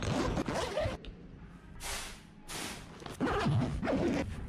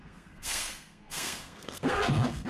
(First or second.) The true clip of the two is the first